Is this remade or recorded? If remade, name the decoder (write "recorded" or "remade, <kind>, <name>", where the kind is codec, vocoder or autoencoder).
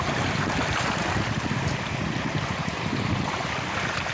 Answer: recorded